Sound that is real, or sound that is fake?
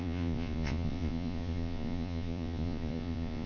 fake